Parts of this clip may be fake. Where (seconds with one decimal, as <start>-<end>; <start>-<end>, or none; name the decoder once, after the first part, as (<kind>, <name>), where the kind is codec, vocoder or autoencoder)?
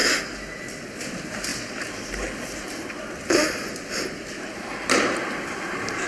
none